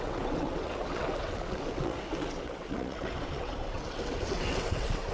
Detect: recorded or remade remade